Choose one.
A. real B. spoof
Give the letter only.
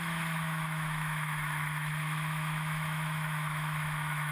B